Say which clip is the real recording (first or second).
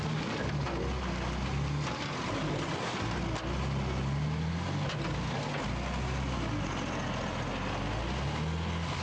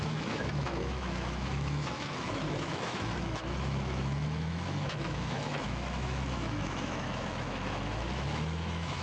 first